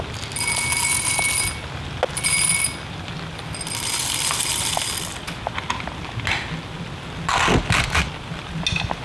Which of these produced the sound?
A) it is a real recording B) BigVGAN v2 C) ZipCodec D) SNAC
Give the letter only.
A